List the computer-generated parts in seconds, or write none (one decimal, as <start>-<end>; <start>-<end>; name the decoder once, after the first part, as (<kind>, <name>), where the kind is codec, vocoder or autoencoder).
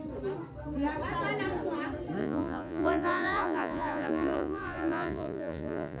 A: 2.2-6.0 (vocoder, Vocos)